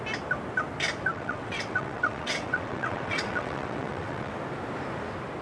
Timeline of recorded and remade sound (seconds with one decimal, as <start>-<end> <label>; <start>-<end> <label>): 0.0-1.1 recorded; 1.1-4.3 remade; 4.3-5.4 recorded